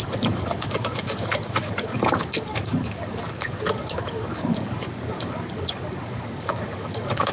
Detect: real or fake fake